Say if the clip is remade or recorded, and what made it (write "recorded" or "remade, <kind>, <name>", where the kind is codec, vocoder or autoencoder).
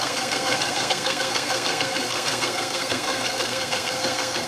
remade, codec, SNAC